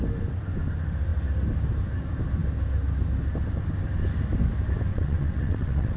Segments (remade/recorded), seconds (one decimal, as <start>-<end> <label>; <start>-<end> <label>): 0.0-4.9 recorded; 4.9-6.0 remade